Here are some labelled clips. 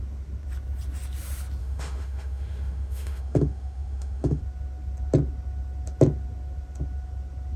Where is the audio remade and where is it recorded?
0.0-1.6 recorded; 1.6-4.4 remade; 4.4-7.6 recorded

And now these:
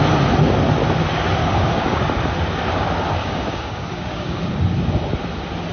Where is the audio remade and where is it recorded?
0.0-1.4 recorded; 1.4-2.0 remade; 2.0-3.2 recorded; 3.2-4.4 remade; 4.4-5.7 recorded

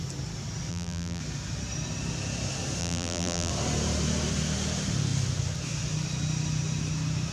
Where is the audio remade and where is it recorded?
0.0-0.7 recorded; 0.7-1.2 remade; 1.2-2.8 recorded; 2.8-3.5 remade; 3.5-7.3 recorded